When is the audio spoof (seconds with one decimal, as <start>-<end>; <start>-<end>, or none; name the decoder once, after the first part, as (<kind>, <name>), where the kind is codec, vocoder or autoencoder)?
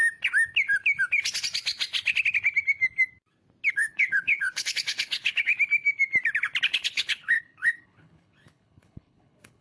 3.7-5.5 (codec, HILCodec); 6.6-9.6